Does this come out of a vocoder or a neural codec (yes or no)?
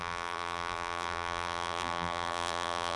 yes